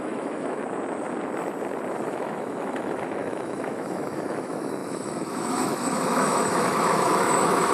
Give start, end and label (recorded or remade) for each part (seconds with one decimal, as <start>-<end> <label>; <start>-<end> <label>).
0.0-0.6 remade; 0.6-2.1 recorded; 2.1-7.7 remade